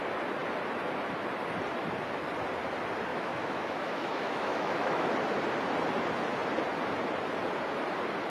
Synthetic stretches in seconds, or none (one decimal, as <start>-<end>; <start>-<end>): 3.1-5.1